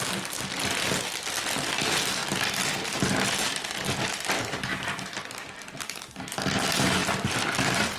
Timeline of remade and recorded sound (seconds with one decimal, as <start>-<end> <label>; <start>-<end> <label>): 0.0-8.0 recorded